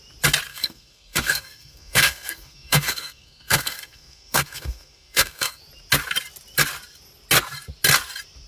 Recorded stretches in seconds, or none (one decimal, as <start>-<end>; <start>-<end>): 0.0-0.5; 5.6-8.5